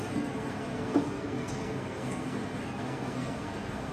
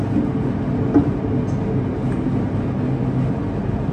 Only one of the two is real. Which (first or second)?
second